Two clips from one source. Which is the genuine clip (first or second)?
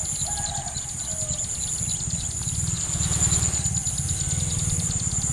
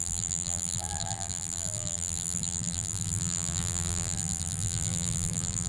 first